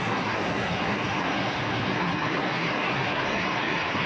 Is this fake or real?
fake